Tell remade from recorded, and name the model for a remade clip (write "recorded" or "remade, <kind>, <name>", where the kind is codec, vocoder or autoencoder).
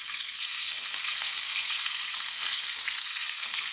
remade, codec, SNAC